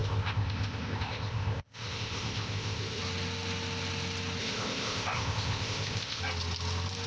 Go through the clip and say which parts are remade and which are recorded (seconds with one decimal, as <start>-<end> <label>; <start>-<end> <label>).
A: 0.0-3.0 remade; 3.0-4.4 recorded; 4.4-6.2 remade; 6.2-7.1 recorded